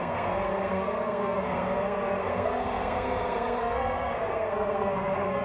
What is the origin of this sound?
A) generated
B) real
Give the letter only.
A